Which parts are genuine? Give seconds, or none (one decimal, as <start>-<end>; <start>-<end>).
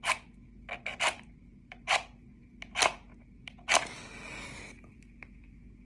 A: 0.0-5.8